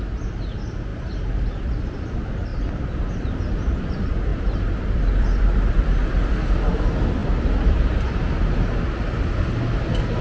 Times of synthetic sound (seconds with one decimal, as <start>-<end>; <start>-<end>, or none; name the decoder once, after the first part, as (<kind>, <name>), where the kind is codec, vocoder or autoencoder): 4.3-6.3 (vocoder, BigVGAN v2); 7.2-7.8